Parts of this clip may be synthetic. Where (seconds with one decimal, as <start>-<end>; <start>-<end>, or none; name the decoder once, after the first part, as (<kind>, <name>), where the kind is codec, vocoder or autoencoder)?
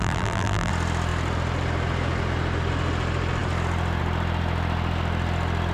0.0-0.7 (vocoder, BigVGAN v2)